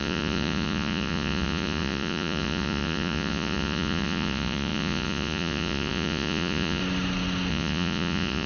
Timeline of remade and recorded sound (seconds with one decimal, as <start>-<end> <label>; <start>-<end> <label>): 0.0-6.8 remade; 6.8-7.5 recorded; 7.5-8.5 remade

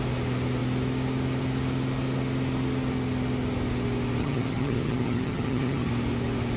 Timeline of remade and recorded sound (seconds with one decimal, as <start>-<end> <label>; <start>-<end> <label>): 0.0-4.2 recorded; 4.2-5.9 remade; 5.9-6.6 recorded

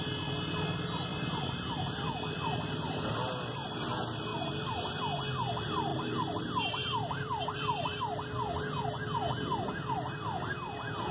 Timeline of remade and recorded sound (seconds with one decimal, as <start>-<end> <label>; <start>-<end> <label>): 0.0-1.1 recorded; 1.1-3.8 remade; 3.8-4.3 recorded; 4.3-5.0 remade; 5.0-5.9 recorded; 5.9-8.0 remade; 8.0-11.1 recorded

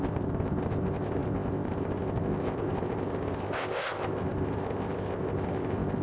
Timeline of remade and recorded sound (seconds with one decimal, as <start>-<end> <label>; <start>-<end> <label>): 0.0-6.0 remade

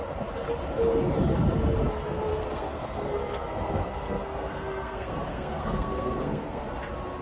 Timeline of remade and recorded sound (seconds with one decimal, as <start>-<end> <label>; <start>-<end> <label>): 0.0-2.3 recorded; 2.3-6.6 remade; 6.6-7.2 recorded

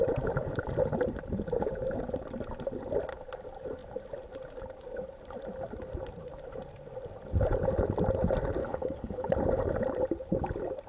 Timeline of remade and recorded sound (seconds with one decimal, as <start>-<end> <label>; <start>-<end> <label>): 0.0-8.6 recorded; 8.6-9.3 remade; 9.3-10.9 recorded

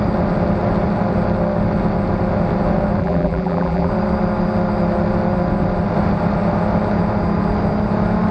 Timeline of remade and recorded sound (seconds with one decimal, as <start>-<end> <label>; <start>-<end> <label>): 0.0-3.0 recorded; 3.0-3.9 remade; 3.9-8.3 recorded